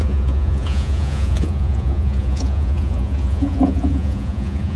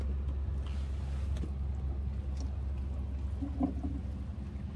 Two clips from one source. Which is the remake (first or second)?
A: first